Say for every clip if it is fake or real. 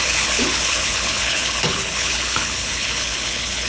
fake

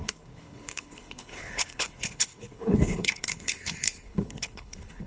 fake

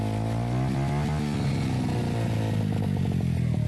real